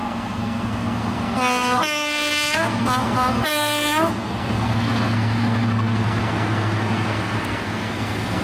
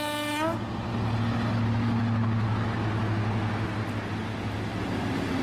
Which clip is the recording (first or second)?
second